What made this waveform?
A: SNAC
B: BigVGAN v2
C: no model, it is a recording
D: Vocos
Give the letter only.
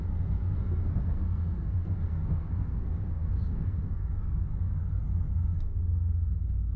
A